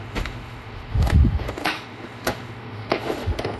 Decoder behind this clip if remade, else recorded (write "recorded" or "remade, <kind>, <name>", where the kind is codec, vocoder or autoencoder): remade, autoencoder, DAC-VAE